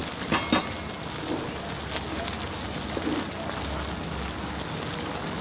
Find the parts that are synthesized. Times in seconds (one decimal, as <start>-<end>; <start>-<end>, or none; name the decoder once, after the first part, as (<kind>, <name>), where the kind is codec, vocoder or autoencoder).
none

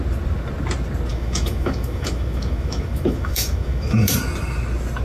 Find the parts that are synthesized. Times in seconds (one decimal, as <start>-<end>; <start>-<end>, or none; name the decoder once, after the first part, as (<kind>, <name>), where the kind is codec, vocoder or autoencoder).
1.1-4.1 (autoencoder, DAC-VAE)

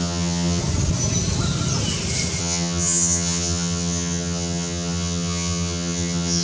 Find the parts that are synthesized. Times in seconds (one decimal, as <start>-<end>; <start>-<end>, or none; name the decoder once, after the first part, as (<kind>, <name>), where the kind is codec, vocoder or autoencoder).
0.0-0.6 (vocoder, HiFi-GAN); 2.4-6.4